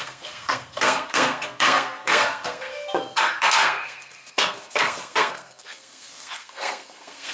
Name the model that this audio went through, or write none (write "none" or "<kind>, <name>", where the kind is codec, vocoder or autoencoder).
codec, SNAC